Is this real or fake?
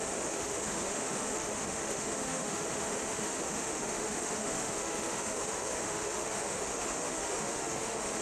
fake